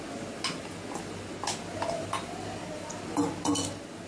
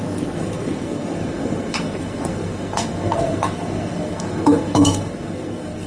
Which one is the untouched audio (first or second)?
first